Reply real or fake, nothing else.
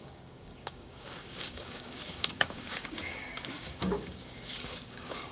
fake